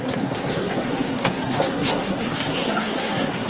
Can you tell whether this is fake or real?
fake